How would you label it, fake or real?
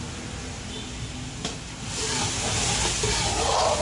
real